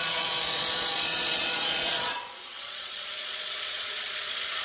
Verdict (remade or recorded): remade